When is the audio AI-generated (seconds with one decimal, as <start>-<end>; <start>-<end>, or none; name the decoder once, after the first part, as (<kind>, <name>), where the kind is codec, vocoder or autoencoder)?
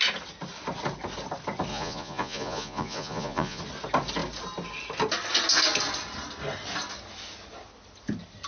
1.7-3.6 (vocoder, Vocos)